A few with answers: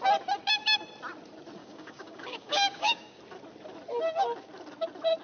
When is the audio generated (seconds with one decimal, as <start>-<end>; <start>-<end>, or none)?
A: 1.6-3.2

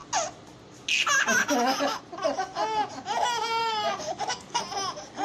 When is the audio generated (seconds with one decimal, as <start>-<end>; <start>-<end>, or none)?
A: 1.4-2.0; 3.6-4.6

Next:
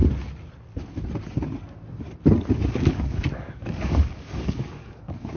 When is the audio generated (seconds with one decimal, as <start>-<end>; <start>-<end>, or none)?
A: 2.7-5.4

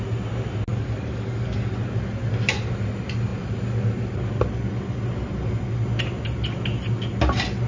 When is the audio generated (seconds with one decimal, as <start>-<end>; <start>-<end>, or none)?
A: 0.7-1.7

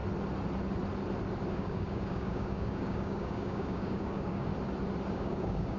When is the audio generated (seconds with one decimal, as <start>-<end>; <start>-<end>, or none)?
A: 1.5-4.5; 5.1-5.8

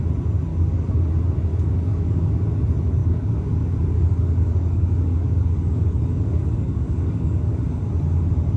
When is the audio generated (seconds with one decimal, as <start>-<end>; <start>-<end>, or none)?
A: 0.5-1.1; 1.5-2.3; 3.0-7.6

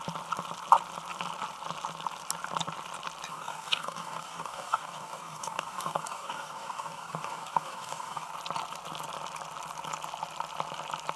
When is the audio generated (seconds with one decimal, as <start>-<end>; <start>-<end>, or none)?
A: 3.3-8.3

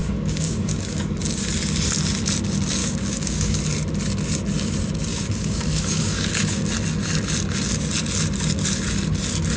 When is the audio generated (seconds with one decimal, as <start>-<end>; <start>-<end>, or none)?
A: 0.0-1.2; 2.8-3.6; 5.1-6.7